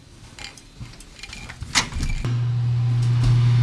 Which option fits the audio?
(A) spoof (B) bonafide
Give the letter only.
B